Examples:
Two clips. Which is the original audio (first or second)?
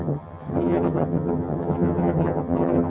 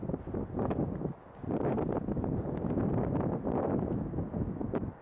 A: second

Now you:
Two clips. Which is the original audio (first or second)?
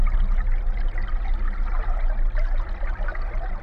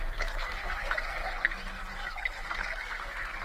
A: first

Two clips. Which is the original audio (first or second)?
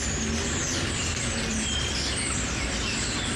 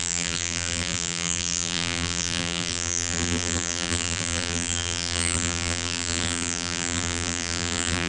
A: first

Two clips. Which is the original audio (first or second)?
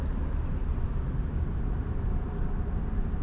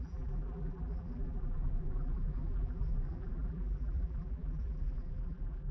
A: first